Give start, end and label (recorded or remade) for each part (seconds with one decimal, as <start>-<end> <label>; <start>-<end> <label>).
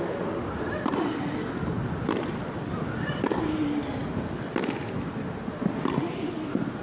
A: 0.0-6.8 recorded